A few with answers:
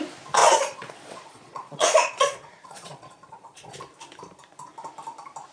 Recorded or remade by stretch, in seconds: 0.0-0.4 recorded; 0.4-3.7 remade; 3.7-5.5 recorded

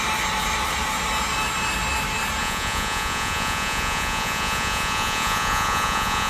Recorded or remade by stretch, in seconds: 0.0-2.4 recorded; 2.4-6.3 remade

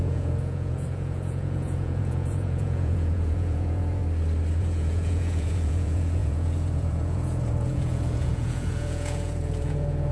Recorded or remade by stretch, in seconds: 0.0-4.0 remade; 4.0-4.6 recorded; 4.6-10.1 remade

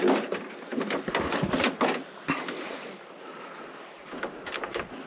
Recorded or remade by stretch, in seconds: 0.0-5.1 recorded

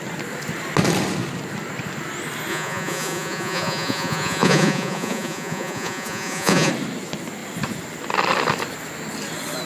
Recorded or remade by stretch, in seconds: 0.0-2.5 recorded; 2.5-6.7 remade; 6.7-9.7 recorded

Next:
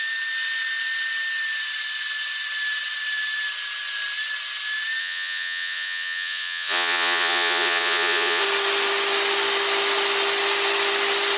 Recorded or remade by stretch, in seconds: 0.0-5.0 recorded; 5.0-8.4 remade; 8.4-11.4 recorded

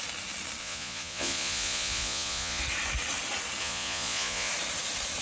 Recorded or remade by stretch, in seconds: 0.0-0.6 recorded; 0.6-2.6 remade; 2.6-3.6 recorded; 3.6-4.5 remade; 4.5-5.2 recorded

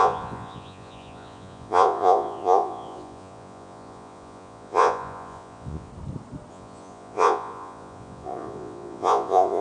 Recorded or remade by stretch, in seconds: 0.0-5.9 remade; 5.9-6.5 recorded; 6.5-9.6 remade